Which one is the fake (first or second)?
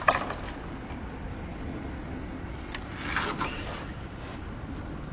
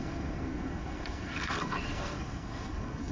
second